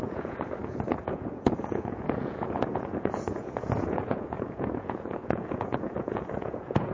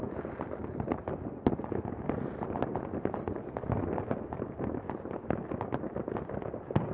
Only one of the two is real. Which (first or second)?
second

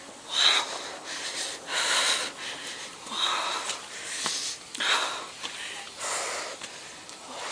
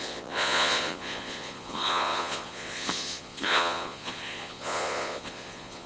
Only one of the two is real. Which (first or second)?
first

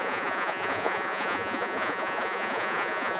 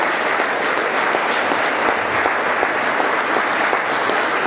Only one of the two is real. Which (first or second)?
second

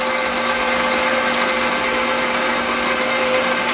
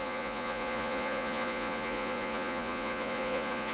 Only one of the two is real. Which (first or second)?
first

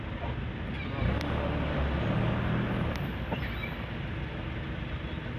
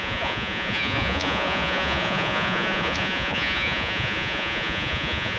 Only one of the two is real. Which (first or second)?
first